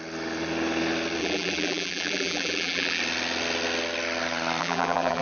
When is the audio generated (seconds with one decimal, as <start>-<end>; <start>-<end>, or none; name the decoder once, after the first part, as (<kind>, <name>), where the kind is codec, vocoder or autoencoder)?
1.2-3.0 (vocoder, BigVGAN v2); 4.6-5.2